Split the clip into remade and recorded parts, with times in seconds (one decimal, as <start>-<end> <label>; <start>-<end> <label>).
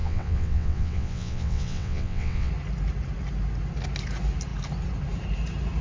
0.0-2.5 remade; 2.5-5.8 recorded